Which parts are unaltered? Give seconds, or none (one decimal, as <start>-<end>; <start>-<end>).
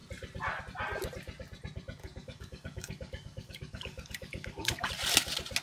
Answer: 0.0-2.0; 4.9-5.6